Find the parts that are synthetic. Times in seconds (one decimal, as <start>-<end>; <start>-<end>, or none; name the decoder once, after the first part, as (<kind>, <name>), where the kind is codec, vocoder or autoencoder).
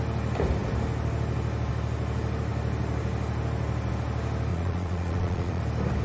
4.5-5.6 (vocoder, Vocos)